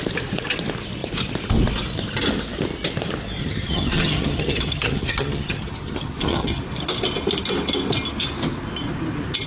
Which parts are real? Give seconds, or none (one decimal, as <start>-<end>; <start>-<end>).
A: 0.0-3.4; 6.6-9.5

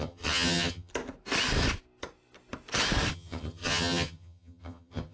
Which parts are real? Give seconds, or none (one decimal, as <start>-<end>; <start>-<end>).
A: 0.9-3.1

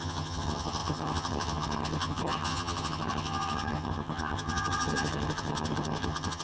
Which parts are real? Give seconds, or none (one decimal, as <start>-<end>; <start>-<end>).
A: none